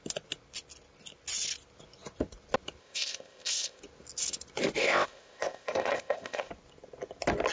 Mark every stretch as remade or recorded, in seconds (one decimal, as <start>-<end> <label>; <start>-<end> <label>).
0.0-2.8 recorded; 2.8-3.8 remade; 3.8-4.8 recorded; 4.8-6.5 remade; 6.5-7.5 recorded